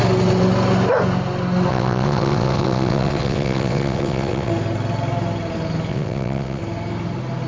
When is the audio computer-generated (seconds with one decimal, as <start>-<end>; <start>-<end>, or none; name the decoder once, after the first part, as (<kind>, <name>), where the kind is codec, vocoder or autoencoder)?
1.7-4.5 (vocoder, WaveNeXt); 5.9-6.6